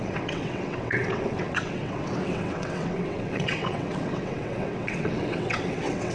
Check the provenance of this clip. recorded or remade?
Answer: remade